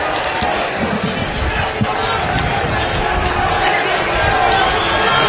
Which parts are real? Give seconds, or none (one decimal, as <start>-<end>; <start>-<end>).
0.0-3.2; 3.8-5.3